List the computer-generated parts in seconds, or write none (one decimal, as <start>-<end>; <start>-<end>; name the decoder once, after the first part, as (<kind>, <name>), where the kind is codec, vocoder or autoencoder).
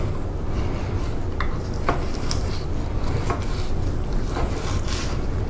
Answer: none